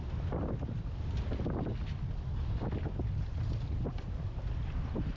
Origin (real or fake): real